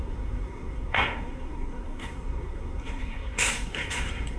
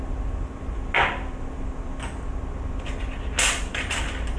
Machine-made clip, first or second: first